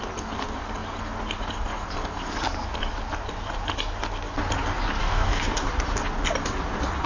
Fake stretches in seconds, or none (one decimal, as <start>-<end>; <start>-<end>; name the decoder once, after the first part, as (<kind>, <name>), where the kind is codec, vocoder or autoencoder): 5.0-5.7 (codec, DAC)